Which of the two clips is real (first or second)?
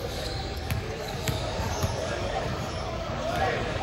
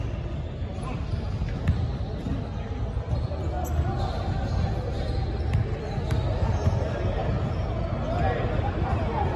second